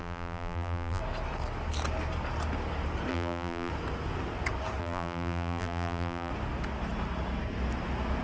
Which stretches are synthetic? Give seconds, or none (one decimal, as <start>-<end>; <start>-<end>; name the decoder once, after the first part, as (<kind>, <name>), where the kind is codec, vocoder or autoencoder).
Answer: 0.0-1.0 (vocoder, BigVGAN v2); 3.1-3.7; 4.8-6.3